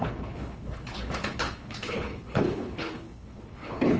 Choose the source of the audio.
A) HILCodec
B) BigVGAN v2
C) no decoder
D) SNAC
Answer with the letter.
A